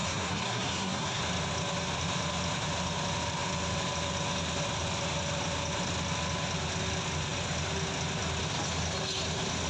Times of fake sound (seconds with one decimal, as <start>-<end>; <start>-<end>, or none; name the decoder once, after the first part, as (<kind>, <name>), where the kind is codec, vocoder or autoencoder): 0.0-1.2 (codec, SNAC)